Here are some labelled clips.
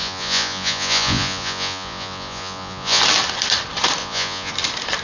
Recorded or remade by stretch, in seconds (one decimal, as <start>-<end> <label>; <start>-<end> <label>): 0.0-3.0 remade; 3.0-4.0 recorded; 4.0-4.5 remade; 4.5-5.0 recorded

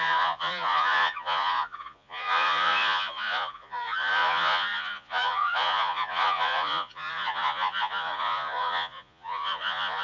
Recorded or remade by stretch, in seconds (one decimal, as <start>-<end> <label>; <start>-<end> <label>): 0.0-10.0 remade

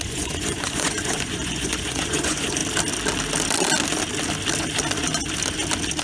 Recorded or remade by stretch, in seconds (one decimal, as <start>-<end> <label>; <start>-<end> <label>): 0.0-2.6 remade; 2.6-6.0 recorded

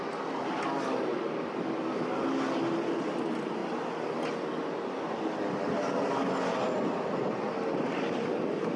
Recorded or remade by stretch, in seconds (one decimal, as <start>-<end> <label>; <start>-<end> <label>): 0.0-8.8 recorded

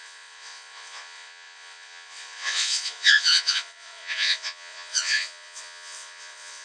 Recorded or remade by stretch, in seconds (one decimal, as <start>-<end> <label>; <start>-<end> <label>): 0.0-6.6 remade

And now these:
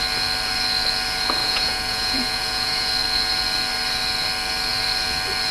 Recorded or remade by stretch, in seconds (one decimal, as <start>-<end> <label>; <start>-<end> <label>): 0.0-1.4 recorded; 1.4-2.9 remade; 2.9-5.5 recorded

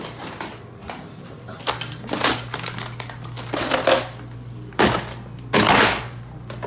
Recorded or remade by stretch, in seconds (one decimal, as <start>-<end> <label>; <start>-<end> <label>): 0.0-6.7 recorded

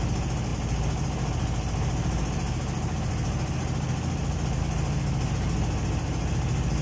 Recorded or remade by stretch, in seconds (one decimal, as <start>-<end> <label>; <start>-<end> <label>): 0.0-6.8 recorded